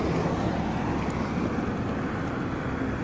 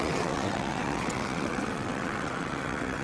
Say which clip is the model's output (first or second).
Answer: second